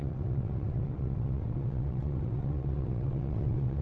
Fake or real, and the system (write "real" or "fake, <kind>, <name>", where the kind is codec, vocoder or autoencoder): fake, vocoder, WaveNeXt